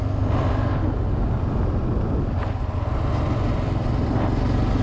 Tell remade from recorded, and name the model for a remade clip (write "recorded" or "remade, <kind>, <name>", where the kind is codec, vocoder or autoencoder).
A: recorded